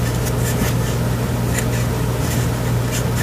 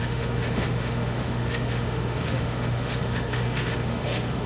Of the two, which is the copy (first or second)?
second